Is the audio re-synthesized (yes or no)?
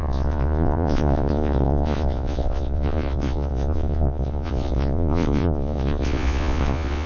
yes